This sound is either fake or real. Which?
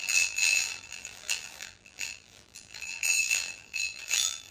fake